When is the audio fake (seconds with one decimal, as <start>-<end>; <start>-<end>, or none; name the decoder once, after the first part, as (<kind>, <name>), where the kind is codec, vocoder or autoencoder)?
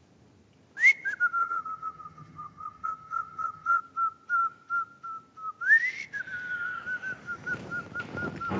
1.4-3.8 (vocoder, HiFi-GAN)